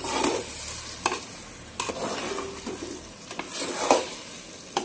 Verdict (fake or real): real